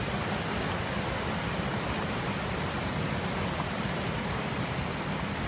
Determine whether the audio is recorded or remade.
recorded